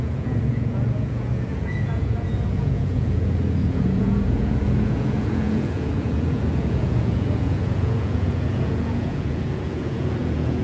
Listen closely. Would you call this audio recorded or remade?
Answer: remade